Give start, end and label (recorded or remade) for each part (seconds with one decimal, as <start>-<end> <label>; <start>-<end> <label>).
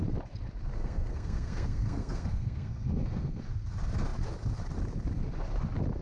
0.0-0.8 recorded; 0.8-3.4 remade; 3.4-6.0 recorded